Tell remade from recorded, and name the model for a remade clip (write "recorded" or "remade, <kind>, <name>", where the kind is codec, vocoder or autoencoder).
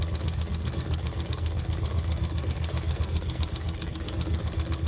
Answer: remade, codec, SNAC